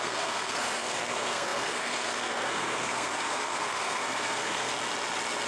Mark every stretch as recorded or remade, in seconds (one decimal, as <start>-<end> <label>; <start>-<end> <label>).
0.0-4.7 remade; 4.7-5.5 recorded